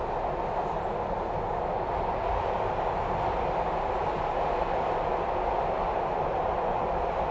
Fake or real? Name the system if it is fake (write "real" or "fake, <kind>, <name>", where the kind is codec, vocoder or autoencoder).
real